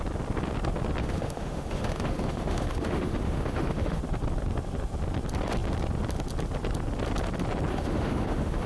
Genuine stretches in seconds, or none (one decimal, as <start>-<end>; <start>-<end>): 0.0-1.0; 4.0-7.7

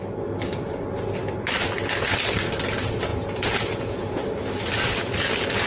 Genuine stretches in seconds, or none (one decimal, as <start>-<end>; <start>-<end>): 0.0-3.1; 4.2-5.7

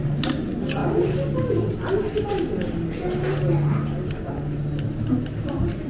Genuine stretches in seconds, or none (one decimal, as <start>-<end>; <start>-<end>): 0.0-5.9

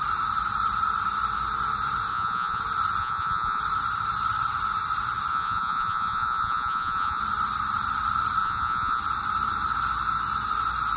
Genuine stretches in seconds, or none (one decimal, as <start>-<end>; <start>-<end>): 0.0-2.1; 2.6-3.0; 3.6-5.3; 7.2-8.4; 9.0-11.0

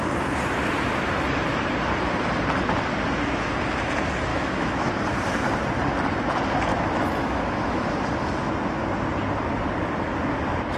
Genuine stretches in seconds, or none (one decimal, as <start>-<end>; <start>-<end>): 0.0-4.3; 4.9-6.7; 7.9-10.8

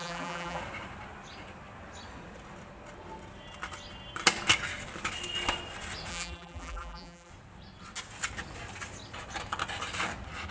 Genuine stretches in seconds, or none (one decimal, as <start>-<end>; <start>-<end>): 0.6-6.1; 7.3-10.5

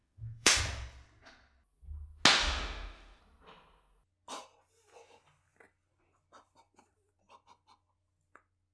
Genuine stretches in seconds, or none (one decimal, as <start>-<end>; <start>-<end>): 0.6-2.4; 3.2-8.7

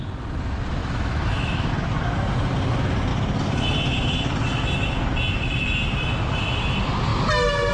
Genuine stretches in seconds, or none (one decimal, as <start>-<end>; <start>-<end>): 0.0-0.8; 1.7-7.7